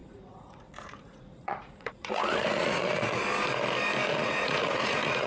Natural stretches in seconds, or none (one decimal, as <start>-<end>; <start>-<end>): 3.2-4.1